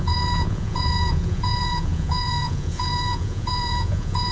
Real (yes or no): no